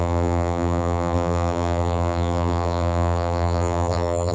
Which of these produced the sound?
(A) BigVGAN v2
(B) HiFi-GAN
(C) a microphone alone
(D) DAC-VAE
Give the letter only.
A